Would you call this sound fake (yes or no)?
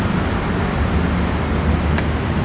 no